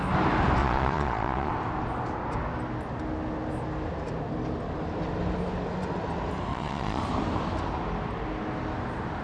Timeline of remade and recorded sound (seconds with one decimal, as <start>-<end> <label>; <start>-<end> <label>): 0.0-0.6 recorded; 0.6-1.5 remade; 1.5-6.5 recorded; 6.5-7.0 remade; 7.0-9.2 recorded